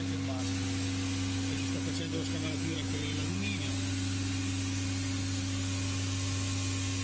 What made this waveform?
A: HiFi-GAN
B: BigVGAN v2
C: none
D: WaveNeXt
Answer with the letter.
C